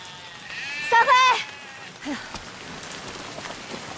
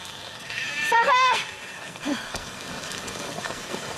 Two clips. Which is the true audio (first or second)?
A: first